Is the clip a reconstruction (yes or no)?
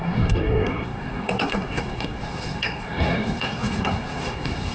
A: yes